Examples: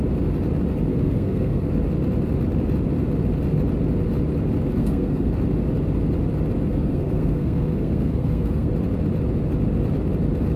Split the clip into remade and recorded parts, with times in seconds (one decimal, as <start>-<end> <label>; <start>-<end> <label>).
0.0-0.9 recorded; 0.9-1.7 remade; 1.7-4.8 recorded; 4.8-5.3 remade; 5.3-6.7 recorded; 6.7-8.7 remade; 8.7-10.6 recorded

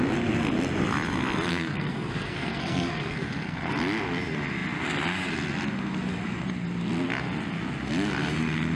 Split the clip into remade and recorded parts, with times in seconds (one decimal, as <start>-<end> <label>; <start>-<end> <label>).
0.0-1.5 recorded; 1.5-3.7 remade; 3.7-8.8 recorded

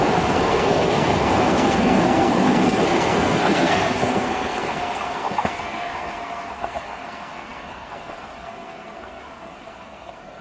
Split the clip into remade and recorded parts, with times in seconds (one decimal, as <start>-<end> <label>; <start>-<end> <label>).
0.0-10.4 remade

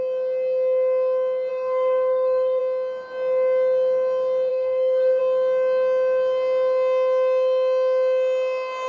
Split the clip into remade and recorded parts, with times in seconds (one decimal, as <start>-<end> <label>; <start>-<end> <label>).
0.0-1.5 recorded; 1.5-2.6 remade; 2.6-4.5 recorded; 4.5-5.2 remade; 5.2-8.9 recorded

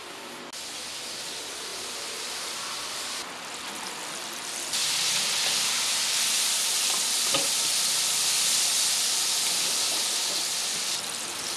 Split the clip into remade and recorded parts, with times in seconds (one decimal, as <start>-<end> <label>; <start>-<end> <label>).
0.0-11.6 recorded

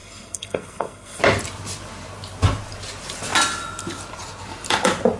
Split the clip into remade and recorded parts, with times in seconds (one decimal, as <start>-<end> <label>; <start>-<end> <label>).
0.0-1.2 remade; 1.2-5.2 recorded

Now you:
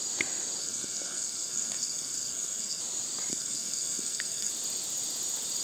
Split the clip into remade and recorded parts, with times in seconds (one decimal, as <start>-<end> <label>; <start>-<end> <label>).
0.0-0.6 recorded; 0.6-2.8 remade; 2.8-3.3 recorded; 3.3-4.5 remade; 4.5-5.6 recorded